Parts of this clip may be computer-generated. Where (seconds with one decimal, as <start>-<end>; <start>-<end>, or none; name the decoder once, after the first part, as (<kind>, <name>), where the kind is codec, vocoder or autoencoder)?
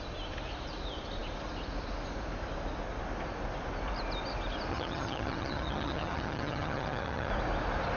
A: 4.7-7.3 (vocoder, HiFi-GAN)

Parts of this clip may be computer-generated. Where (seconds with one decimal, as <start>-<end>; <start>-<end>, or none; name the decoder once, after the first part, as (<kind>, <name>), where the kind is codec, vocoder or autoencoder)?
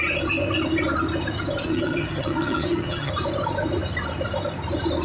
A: 1.7-3.1 (vocoder, HiFi-GAN)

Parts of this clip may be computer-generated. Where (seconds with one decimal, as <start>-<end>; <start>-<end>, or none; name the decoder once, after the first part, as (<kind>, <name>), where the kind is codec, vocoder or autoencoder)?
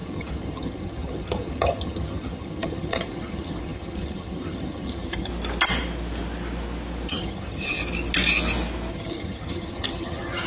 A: 0.0-5.3 (vocoder, HiFi-GAN); 7.1-7.8; 8.9-10.5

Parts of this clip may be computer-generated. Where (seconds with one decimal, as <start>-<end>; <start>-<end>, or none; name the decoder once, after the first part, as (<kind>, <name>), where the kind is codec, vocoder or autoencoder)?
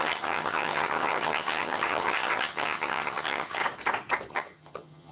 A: 0.0-3.6 (vocoder, HiFi-GAN); 4.3-5.1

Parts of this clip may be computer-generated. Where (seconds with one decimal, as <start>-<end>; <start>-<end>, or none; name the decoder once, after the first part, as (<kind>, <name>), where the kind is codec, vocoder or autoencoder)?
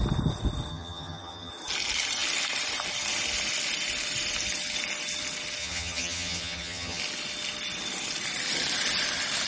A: 0.7-1.5 (vocoder, HiFi-GAN); 5.6-7.0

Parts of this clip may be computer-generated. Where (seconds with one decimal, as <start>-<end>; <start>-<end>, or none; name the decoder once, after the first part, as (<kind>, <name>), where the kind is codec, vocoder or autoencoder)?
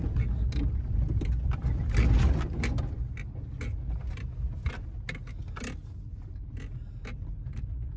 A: none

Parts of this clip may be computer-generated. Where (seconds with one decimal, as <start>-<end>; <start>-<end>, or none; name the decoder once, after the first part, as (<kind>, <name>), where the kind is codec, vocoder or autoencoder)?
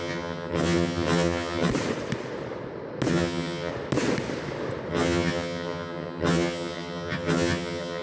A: 0.0-1.7 (vocoder, HiFi-GAN); 3.1-3.7; 4.9-8.0